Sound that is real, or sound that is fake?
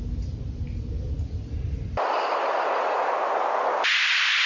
real